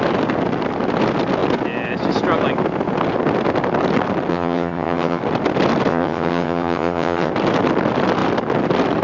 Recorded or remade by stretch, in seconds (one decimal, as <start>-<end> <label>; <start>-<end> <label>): 0.0-4.3 recorded; 4.3-5.2 remade; 5.2-5.9 recorded; 5.9-7.3 remade; 7.3-9.0 recorded

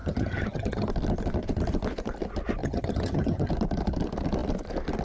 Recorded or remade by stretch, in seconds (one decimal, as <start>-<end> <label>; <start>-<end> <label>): 0.0-0.9 remade; 0.9-2.6 recorded; 2.6-3.5 remade; 3.5-5.0 recorded

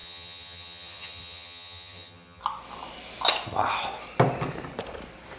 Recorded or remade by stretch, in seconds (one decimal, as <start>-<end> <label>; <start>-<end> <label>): 0.0-2.4 remade; 2.4-5.4 recorded

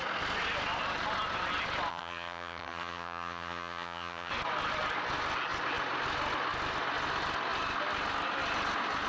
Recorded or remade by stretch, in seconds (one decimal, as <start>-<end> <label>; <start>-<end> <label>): 0.0-1.9 recorded; 1.9-4.3 remade; 4.3-9.1 recorded

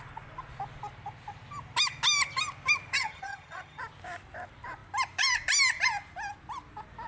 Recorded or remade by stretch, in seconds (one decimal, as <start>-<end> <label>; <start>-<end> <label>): 0.0-3.0 recorded; 3.0-3.8 remade; 3.8-7.1 recorded

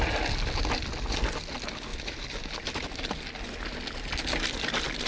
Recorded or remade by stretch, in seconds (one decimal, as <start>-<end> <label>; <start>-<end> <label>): 0.0-5.1 recorded